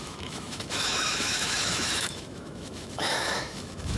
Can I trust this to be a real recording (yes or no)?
no